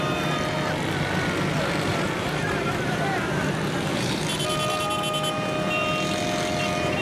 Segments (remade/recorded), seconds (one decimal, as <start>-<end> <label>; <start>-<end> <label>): 0.0-1.9 recorded; 1.9-4.4 remade; 4.4-7.0 recorded